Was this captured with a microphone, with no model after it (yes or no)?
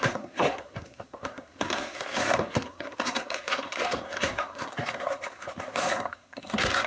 no